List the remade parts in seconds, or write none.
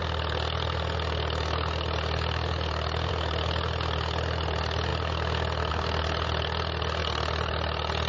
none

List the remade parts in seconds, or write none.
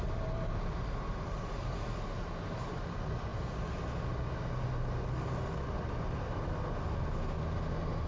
none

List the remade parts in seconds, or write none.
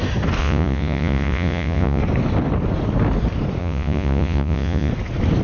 0.4-2.0 (vocoder, Vocos); 3.6-4.9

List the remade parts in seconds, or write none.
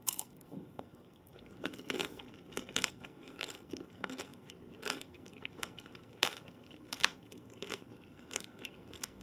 0.0-9.2 (codec, SNAC)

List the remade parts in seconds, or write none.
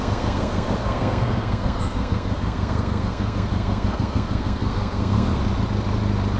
0.0-5.4 (codec, SNAC)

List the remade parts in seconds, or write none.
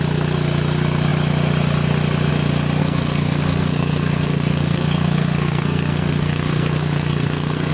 2.8-7.7 (codec, SNAC)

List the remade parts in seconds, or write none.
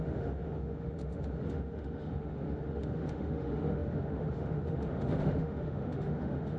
0.0-6.6 (autoencoder, DAC-VAE)